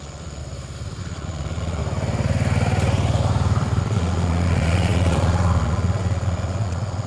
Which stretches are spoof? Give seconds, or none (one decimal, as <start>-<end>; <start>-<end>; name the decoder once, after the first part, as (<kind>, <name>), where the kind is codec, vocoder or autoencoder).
0.0-0.4 (vocoder, Vocos); 1.0-1.8; 3.8-7.1